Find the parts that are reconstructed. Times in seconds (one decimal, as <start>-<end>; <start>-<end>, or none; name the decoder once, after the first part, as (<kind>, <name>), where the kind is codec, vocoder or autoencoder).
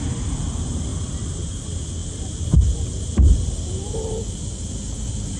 0.0-0.9 (vocoder, BigVGAN v2); 1.5-5.4